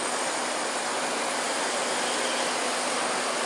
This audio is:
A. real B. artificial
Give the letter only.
A